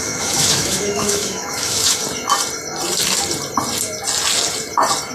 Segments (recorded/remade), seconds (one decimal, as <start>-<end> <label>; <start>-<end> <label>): 0.0-2.0 remade; 2.0-5.1 recorded